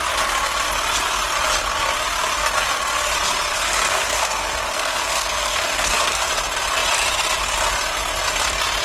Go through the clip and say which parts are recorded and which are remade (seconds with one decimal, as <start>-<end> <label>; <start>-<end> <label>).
0.0-3.5 recorded; 3.5-6.3 remade; 6.3-8.8 recorded

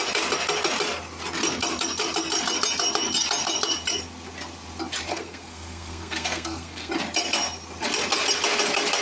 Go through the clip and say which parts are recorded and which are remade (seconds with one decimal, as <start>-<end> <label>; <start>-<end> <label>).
0.0-5.1 recorded; 5.1-6.9 remade; 6.9-9.0 recorded

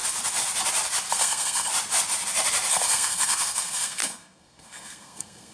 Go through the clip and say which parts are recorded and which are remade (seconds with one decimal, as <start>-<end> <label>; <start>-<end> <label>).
0.0-1.1 recorded; 1.1-1.7 remade; 1.7-2.7 recorded; 2.7-5.5 remade